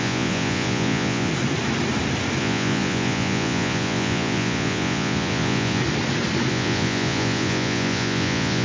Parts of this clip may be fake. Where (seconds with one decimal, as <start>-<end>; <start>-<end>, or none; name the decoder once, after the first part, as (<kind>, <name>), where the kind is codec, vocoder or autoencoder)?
0.0-1.3 (vocoder, Vocos); 2.4-5.8; 6.5-8.6